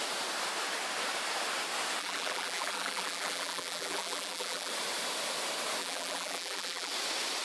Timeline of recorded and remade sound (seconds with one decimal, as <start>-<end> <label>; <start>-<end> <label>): 0.0-2.0 recorded; 2.0-4.7 remade; 4.7-5.8 recorded; 5.8-6.9 remade; 6.9-7.4 recorded